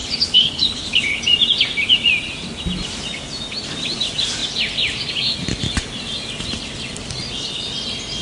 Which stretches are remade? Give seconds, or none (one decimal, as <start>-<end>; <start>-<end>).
0.0-1.2